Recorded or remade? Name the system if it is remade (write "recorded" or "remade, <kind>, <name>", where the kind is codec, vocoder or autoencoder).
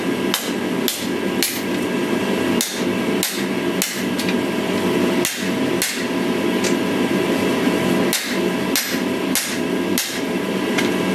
recorded